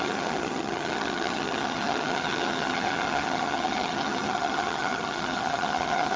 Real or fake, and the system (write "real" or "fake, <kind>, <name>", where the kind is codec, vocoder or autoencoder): fake, vocoder, HiFi-GAN